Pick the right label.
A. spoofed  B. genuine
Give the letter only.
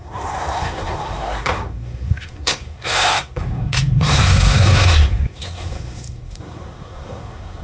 A